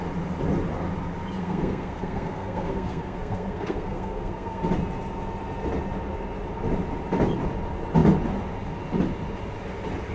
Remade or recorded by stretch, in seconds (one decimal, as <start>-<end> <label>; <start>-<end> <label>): 0.0-1.4 recorded; 1.4-4.6 remade; 4.6-10.1 recorded